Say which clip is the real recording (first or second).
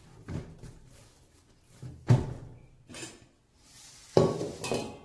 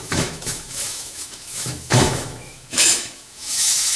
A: first